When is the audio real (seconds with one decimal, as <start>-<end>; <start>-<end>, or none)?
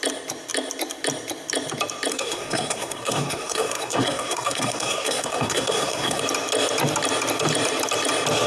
0.0-2.1; 6.2-8.5